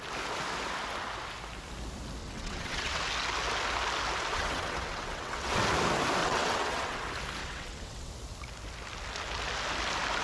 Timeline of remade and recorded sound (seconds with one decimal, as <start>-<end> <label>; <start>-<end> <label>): 0.0-2.2 recorded; 2.2-3.0 remade; 3.0-4.3 recorded; 4.3-5.6 remade; 5.6-6.2 recorded; 6.2-7.0 remade; 7.0-7.4 recorded; 7.4-8.1 remade; 8.1-10.2 recorded